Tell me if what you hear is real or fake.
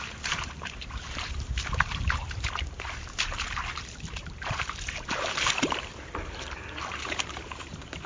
fake